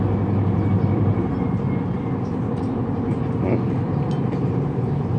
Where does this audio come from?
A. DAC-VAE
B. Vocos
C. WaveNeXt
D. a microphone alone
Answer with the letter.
D